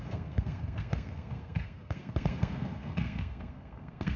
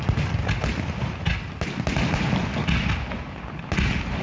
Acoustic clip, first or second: second